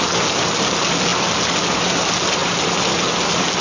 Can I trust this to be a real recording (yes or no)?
yes